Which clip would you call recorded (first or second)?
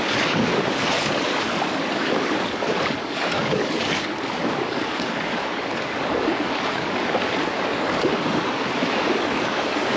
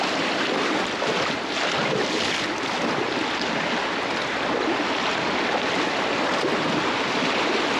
second